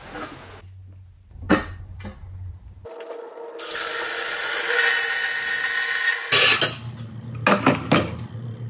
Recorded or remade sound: recorded